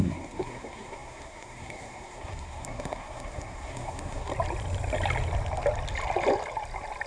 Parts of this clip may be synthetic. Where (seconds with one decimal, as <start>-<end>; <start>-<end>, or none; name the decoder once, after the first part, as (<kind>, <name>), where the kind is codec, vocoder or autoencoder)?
0.0-4.3 (codec, SNAC)